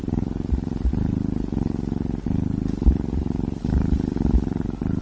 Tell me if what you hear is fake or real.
real